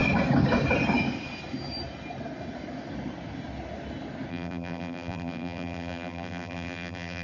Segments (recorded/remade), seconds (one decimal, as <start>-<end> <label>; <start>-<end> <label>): 0.0-4.3 recorded; 4.3-7.2 remade